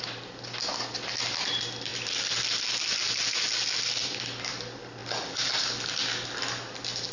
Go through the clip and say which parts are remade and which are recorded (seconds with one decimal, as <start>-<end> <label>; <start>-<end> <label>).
0.0-7.1 recorded